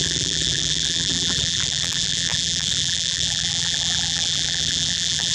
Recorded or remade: remade